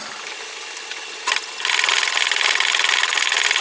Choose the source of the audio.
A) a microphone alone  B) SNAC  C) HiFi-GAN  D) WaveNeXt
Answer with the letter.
A